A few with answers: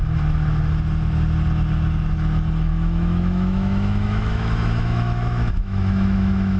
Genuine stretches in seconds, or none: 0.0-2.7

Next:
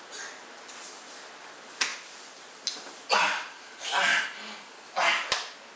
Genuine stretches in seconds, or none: 0.0-5.8

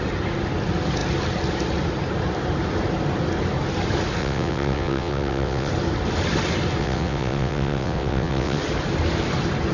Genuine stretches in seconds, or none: 0.0-4.2; 5.7-6.8; 8.6-9.7

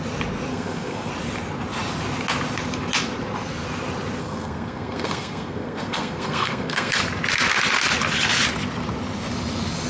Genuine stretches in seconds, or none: 0.0-0.5; 1.1-4.2; 7.0-9.9